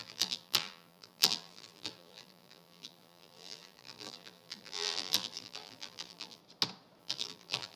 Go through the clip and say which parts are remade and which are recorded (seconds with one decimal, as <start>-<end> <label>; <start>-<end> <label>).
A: 0.0-6.4 remade; 6.4-7.0 recorded; 7.0-7.8 remade